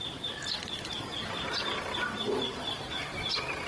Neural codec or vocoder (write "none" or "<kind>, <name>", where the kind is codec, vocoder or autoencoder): none